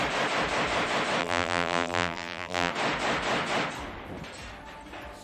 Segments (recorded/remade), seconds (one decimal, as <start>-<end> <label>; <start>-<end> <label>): 0.0-1.2 recorded; 1.2-2.7 remade; 2.7-5.2 recorded